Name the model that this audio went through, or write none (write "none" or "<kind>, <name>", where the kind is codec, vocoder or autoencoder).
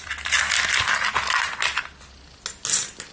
none